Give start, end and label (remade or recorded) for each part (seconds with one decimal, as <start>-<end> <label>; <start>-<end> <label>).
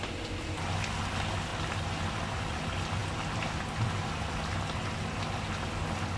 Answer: 0.0-3.0 recorded; 3.0-3.6 remade; 3.6-6.2 recorded